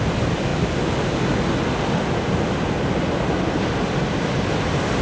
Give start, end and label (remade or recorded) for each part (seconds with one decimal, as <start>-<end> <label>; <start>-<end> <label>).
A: 0.0-5.0 recorded